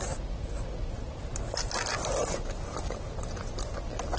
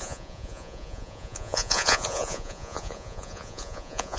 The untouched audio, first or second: first